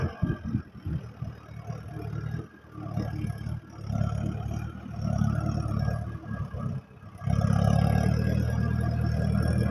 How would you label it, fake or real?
real